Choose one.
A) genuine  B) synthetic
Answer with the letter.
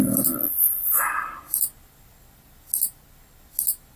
A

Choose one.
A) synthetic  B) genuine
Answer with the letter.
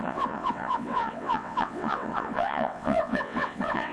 A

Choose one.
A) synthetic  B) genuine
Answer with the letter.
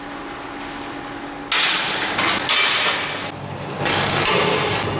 B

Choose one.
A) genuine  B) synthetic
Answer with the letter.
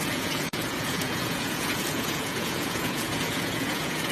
B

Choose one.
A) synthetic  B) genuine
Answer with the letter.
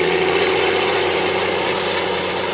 A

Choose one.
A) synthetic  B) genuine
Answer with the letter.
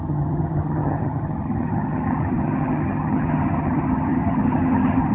A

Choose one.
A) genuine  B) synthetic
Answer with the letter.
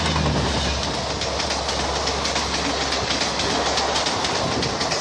A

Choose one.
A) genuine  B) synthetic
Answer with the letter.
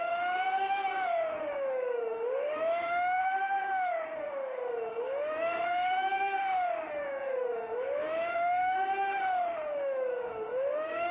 B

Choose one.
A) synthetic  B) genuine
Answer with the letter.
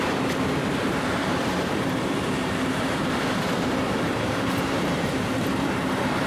A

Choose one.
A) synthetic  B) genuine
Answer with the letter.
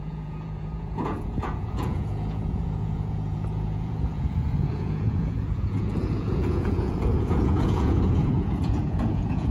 A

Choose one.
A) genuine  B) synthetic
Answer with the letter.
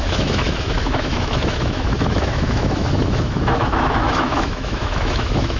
B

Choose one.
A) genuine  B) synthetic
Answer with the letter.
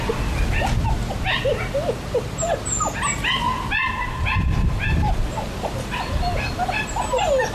A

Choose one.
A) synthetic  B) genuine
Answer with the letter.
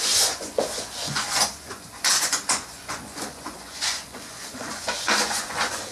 A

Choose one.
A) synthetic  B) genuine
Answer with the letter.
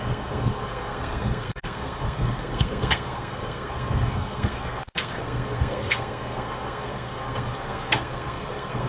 A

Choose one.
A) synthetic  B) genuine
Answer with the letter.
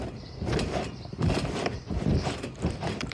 A